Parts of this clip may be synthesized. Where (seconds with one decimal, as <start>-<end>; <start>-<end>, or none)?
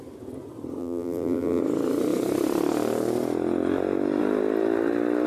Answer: 0.8-1.6